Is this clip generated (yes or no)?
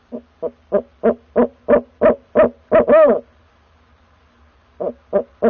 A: no